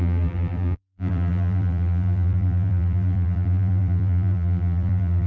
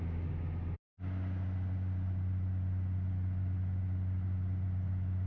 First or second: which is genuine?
second